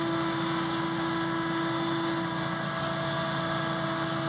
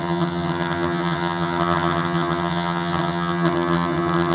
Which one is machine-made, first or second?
second